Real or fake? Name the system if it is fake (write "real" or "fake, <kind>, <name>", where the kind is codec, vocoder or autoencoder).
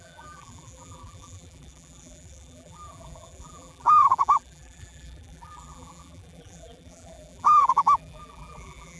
fake, vocoder, BigVGAN v2